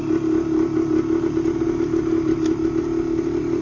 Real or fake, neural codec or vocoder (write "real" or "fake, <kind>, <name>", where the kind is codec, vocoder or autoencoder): real